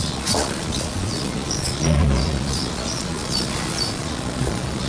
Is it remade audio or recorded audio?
remade